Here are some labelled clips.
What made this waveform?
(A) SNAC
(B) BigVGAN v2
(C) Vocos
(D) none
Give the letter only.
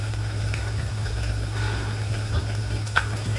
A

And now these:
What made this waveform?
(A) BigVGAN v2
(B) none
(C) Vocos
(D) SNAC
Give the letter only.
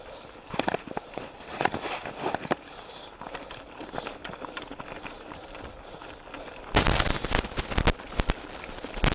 B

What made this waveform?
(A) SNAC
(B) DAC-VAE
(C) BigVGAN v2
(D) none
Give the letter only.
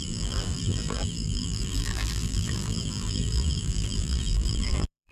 C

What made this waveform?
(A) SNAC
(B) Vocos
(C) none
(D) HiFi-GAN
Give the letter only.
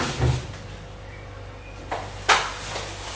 C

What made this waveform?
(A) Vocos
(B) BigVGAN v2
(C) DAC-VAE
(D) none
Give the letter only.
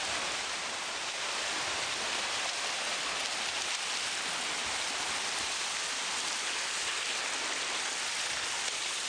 D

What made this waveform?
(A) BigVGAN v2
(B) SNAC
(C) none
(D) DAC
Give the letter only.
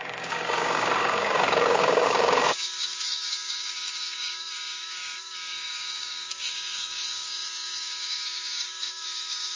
D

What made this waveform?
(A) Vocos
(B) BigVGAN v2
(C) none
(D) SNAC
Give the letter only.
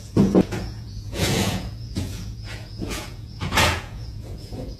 A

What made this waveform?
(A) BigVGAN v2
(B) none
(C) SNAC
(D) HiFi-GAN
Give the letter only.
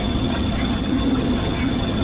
D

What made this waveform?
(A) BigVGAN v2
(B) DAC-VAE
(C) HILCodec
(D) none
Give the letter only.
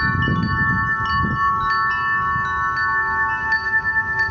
D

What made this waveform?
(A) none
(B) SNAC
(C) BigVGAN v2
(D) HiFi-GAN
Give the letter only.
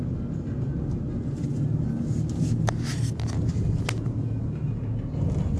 A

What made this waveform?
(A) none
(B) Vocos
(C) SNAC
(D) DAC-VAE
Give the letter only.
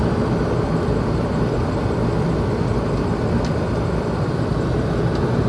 A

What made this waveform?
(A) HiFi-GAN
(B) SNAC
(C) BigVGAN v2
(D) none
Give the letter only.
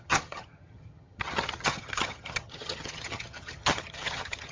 A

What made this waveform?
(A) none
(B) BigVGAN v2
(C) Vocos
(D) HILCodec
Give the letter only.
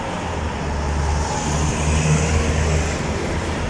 A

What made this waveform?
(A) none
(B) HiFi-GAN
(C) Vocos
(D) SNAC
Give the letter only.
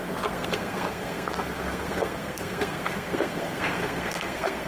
D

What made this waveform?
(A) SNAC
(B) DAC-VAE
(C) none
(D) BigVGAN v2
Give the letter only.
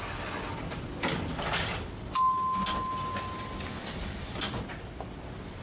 C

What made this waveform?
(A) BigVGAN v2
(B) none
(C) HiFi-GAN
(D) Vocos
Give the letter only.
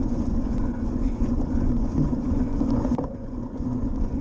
D